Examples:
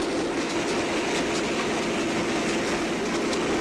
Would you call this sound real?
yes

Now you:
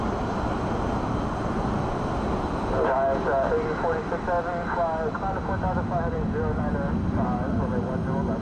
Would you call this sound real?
yes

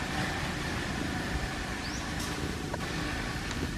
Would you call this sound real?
yes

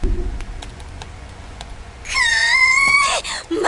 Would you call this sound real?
no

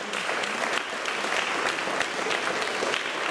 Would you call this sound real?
yes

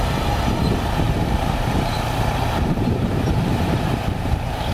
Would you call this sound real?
no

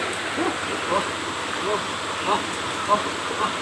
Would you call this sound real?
yes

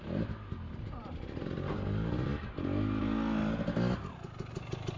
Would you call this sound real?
yes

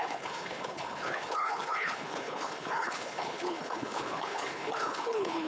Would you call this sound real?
no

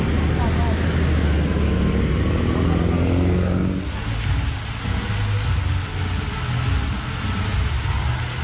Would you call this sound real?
yes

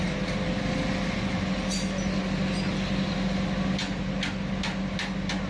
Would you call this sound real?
yes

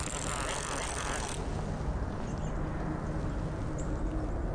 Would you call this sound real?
yes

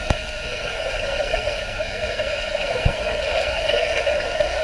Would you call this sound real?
no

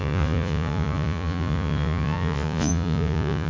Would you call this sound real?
no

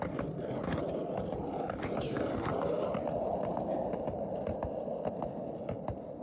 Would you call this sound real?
yes